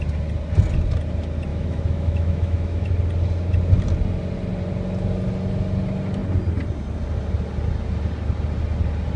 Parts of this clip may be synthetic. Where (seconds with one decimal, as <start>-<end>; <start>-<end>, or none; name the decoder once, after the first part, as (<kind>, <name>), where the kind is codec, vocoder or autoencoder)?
1.5-2.9 (autoencoder, DAC-VAE)

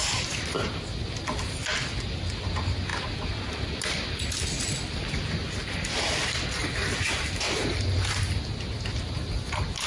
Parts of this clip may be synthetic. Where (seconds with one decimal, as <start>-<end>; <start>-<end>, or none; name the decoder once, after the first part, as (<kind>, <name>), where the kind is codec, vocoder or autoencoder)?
none

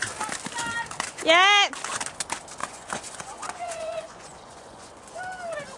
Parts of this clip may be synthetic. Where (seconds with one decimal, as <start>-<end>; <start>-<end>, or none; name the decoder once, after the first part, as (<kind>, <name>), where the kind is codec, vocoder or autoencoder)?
2.6-5.2 (vocoder, Vocos)

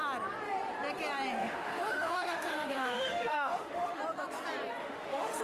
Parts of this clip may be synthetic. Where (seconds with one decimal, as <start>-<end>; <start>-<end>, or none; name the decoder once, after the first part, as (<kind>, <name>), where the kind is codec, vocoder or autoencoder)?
1.4-4.0 (autoencoder, DAC-VAE); 4.8-5.4

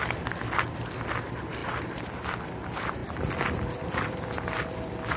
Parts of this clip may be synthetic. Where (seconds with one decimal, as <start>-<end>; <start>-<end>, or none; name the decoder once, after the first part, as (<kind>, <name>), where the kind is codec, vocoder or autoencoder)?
none

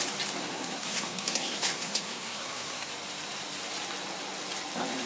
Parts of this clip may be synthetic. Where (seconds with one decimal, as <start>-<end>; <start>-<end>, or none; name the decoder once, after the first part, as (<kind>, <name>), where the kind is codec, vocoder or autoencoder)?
0.4-2.9 (codec, SNAC)

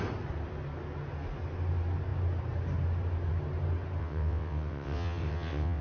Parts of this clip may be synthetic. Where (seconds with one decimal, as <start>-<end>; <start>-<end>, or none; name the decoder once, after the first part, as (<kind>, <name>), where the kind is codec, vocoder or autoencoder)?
4.0-5.8 (vocoder, WaveNeXt)

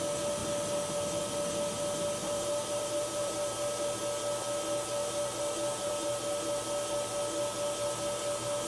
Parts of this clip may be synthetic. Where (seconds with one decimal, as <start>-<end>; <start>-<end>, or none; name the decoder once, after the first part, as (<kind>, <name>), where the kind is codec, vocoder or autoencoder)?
2.2-3.8 (vocoder, BigVGAN v2); 5.0-6.2